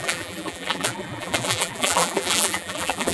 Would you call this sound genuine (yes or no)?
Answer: no